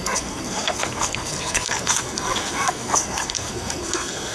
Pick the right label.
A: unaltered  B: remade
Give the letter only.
B